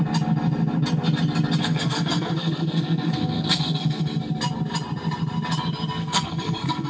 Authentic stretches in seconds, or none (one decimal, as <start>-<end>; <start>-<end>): 0.0-1.6; 4.2-6.0